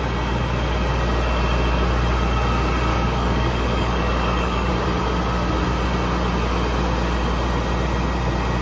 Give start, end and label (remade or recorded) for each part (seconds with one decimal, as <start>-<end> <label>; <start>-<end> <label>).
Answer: 0.0-2.9 recorded; 2.9-4.7 remade; 4.7-8.6 recorded